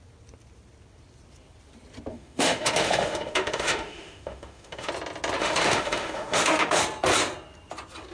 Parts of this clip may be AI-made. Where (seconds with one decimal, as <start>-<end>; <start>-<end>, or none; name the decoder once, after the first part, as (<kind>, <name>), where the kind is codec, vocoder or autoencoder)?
2.1-4.9 (autoencoder, DAC-VAE); 5.4-6.8